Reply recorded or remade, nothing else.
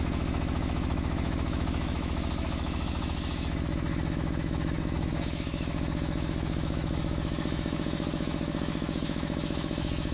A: remade